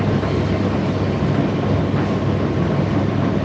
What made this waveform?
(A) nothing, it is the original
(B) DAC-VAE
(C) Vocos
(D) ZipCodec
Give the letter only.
A